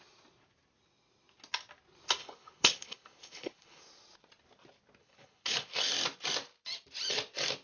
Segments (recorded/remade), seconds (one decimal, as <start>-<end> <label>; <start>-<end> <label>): 0.0-2.2 recorded; 2.2-3.8 remade; 3.8-5.0 recorded; 5.0-5.9 remade; 5.9-7.6 recorded